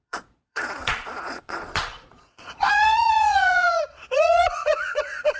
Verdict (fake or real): fake